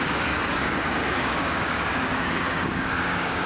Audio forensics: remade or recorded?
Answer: remade